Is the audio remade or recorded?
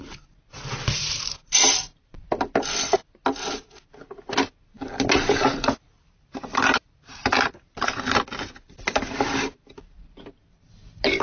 recorded